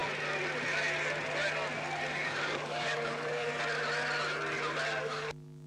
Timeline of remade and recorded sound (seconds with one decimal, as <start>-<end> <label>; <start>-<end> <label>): 0.0-2.1 recorded; 2.1-3.5 remade; 3.5-5.0 recorded; 5.0-5.7 remade